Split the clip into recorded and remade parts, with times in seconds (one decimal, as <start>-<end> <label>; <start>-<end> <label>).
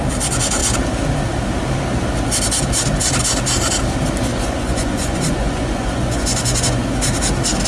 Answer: 0.0-4.3 recorded; 4.3-7.0 remade; 7.0-7.7 recorded